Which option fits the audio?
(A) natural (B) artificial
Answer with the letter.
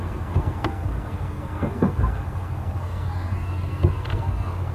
B